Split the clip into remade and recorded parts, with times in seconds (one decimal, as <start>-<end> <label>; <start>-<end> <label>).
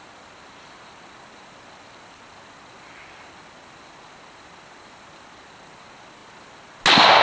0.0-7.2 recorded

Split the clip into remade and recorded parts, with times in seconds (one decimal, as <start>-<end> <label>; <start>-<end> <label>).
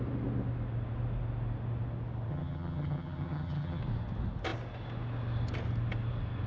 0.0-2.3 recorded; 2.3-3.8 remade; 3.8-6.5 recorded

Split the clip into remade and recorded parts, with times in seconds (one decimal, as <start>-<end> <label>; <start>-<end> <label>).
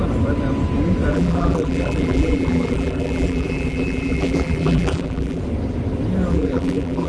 0.0-1.1 recorded; 1.1-5.4 remade; 5.4-6.3 recorded; 6.3-7.1 remade